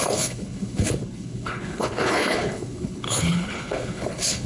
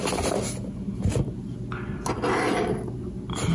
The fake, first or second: first